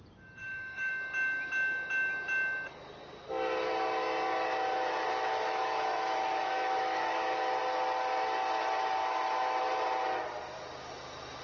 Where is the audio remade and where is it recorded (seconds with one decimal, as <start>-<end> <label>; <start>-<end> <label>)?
0.0-0.4 recorded; 0.4-0.9 remade; 0.9-5.1 recorded; 5.1-7.6 remade; 7.6-9.0 recorded; 9.0-9.8 remade; 9.8-11.4 recorded